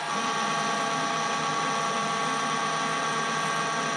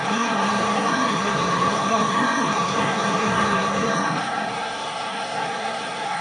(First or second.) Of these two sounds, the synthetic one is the second